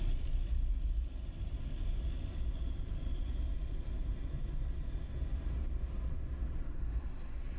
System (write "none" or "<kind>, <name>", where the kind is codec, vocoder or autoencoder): none